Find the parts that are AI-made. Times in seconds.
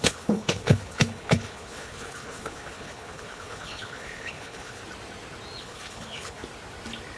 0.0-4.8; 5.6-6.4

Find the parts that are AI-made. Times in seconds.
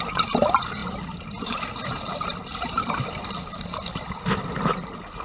none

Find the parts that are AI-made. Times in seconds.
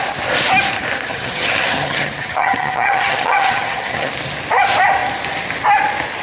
1.1-4.1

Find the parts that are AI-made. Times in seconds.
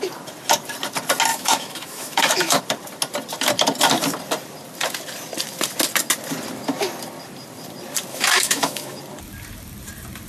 1.3-2.6; 8.1-9.0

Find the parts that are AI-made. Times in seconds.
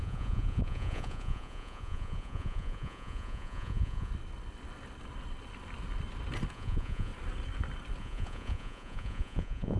0.0-4.1; 6.5-7.1; 8.0-9.8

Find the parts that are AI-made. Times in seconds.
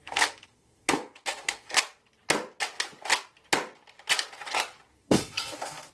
0.0-1.8; 4.9-5.9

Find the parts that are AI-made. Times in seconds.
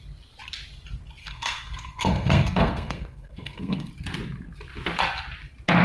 1.2-3.9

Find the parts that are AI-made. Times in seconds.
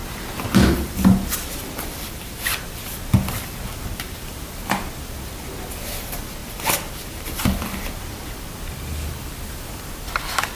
0.0-4.5; 6.4-8.4